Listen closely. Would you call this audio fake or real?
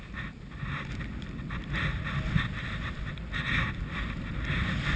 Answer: real